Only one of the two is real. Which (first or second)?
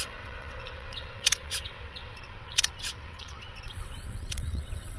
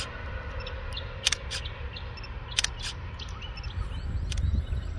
second